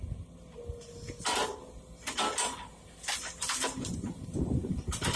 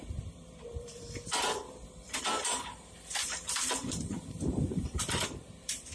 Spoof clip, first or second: second